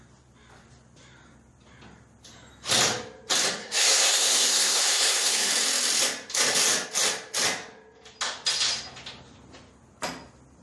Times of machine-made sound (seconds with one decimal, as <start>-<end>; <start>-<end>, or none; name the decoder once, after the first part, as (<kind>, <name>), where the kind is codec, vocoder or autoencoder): 3.6-5.5 (codec, SNAC)